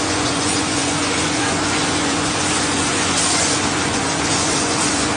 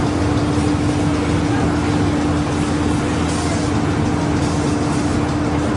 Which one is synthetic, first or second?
first